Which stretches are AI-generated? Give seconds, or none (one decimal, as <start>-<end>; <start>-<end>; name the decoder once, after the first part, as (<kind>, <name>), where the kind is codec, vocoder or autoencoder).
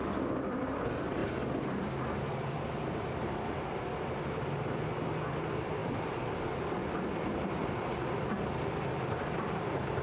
0.0-1.2 (vocoder, BigVGAN v2); 1.8-10.0